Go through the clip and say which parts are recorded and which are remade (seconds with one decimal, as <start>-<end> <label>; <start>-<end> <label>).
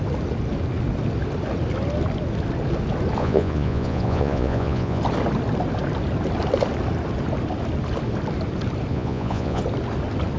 0.0-3.2 recorded; 3.2-5.0 remade; 5.0-8.9 recorded; 8.9-9.6 remade; 9.6-10.4 recorded